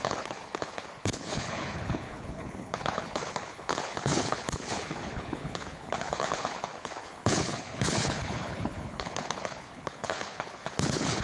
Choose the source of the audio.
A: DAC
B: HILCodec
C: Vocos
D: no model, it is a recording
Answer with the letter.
B